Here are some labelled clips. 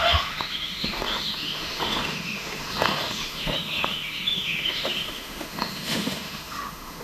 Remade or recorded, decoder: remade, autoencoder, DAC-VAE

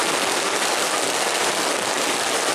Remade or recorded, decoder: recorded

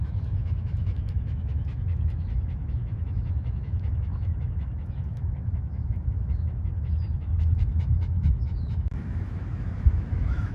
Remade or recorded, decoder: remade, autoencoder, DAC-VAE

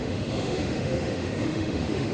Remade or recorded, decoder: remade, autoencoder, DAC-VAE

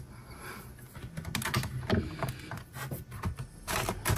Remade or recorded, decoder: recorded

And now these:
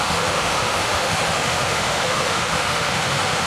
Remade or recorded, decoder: remade, autoencoder, DAC-VAE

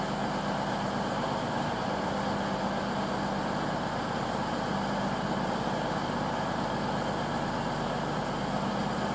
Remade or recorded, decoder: recorded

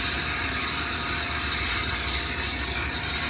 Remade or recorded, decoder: recorded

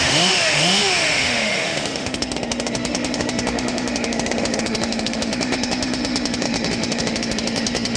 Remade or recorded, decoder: remade, autoencoder, DAC-VAE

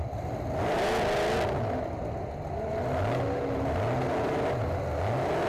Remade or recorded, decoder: recorded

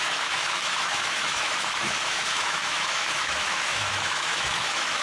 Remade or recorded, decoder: remade, autoencoder, DAC-VAE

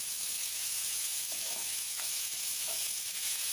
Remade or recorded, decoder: remade, autoencoder, DAC-VAE